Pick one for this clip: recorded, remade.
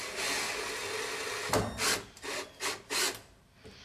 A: recorded